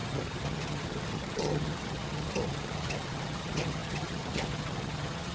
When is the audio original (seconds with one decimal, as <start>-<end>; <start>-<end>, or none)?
none